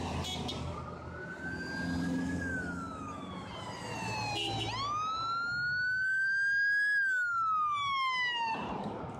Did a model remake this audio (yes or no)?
no